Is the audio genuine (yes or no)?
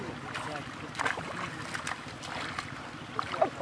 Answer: yes